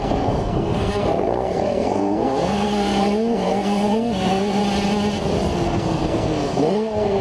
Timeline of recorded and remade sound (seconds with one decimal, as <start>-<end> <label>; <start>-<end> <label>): 0.0-4.6 remade; 4.6-5.5 recorded; 5.5-7.2 remade